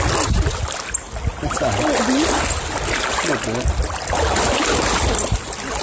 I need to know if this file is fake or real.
real